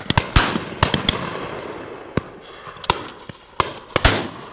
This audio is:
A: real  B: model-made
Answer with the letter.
A